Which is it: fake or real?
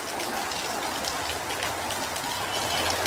real